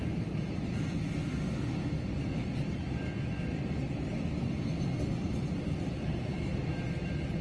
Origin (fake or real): real